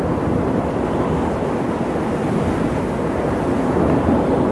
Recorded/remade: recorded